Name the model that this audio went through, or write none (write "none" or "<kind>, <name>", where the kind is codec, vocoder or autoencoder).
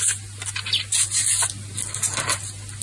none